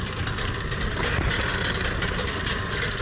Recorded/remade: recorded